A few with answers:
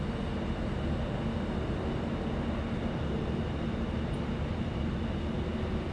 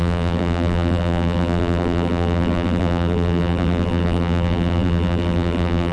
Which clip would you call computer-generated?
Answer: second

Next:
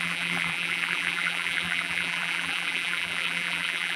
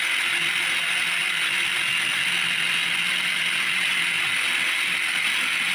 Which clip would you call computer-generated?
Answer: first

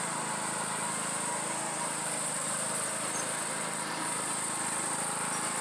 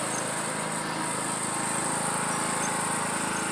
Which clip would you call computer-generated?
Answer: first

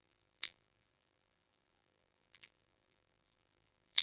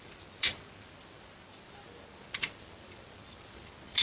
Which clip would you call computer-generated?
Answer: first